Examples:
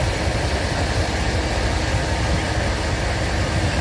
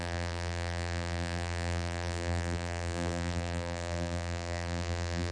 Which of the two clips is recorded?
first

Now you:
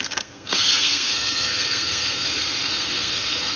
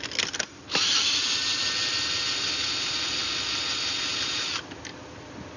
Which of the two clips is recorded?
second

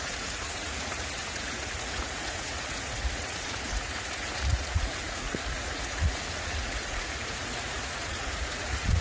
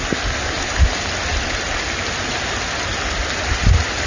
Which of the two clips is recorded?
second